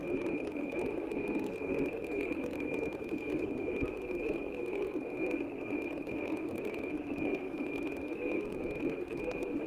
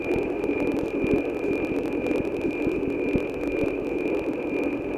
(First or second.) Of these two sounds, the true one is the second